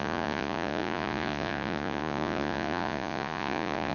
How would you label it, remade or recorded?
remade